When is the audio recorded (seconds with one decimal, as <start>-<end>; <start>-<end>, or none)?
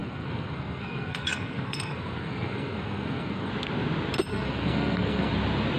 3.5-4.3; 5.3-5.8